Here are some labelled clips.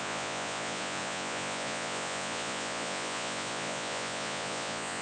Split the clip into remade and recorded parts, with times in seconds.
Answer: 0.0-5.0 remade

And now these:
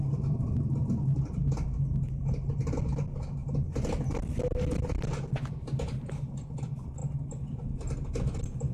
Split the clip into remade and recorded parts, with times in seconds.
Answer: 0.0-8.7 recorded

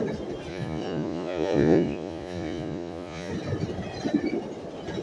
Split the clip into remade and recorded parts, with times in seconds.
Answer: 0.0-0.5 recorded; 0.5-3.3 remade; 3.3-5.0 recorded

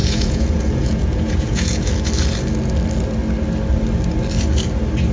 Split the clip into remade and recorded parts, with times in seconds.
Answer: 0.0-1.9 remade; 1.9-5.1 recorded